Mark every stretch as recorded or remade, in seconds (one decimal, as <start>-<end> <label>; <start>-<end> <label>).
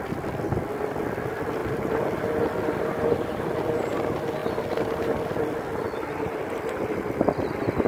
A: 0.0-1.6 recorded; 1.6-3.4 remade; 3.4-4.4 recorded; 4.4-5.0 remade; 5.0-7.9 recorded